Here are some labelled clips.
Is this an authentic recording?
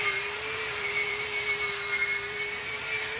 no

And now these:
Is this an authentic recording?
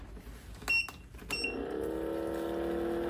yes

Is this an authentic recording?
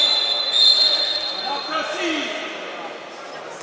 yes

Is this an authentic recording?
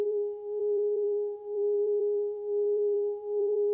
no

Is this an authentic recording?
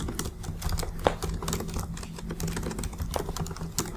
yes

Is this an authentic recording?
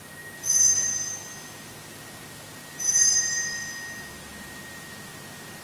yes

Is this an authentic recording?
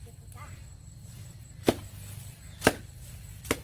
yes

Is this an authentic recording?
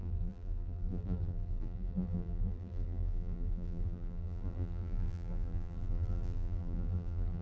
no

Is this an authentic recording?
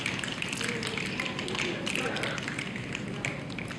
yes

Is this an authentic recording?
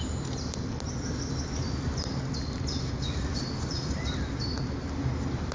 yes